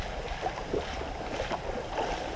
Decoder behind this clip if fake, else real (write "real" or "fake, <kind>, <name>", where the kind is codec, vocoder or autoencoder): real